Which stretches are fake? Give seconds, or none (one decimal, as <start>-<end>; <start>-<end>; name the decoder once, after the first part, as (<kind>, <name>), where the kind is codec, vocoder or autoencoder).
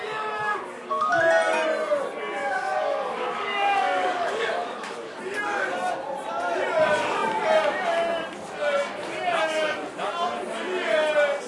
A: 0.5-1.2 (codec, DAC); 2.4-5.2